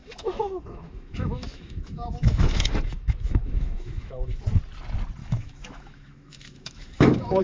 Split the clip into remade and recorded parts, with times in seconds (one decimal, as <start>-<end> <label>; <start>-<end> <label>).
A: 0.0-4.4 remade; 4.4-5.2 recorded; 5.2-7.4 remade